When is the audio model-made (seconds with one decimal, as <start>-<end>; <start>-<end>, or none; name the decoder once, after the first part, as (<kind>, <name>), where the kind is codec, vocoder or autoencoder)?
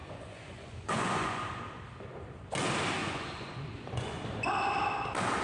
0.0-1.6 (vocoder, Vocos); 3.0-4.2